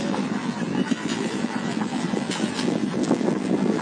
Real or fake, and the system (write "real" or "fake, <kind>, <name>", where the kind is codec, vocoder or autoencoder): fake, vocoder, BigVGAN v2